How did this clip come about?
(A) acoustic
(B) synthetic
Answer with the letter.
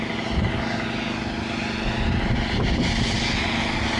A